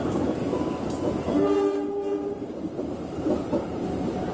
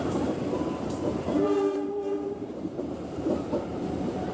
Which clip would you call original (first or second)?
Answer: first